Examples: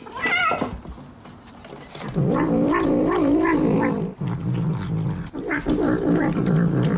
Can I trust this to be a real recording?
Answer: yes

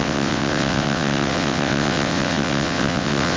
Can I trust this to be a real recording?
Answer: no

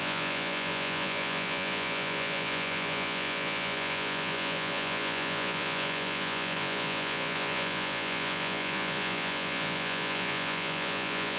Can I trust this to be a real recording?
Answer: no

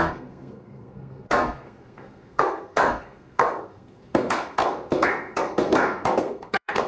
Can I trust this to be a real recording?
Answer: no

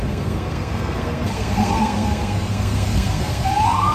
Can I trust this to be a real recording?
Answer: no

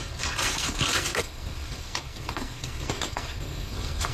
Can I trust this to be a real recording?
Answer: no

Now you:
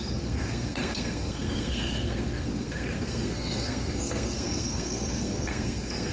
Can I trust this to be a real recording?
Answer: no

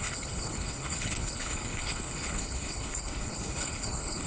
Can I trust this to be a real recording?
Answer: no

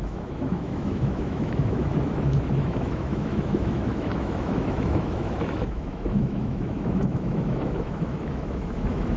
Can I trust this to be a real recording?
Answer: no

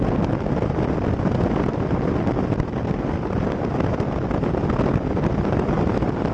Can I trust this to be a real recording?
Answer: yes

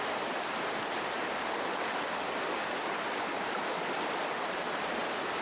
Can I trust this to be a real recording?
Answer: yes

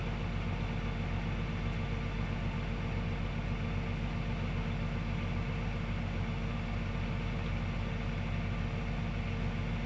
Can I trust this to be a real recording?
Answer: yes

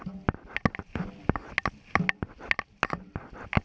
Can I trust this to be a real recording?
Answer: yes